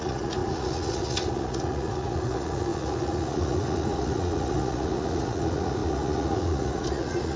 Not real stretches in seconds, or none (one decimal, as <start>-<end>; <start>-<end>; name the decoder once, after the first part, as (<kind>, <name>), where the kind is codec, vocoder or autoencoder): 0.0-7.4 (vocoder, Vocos)